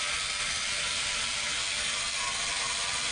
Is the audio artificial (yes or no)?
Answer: no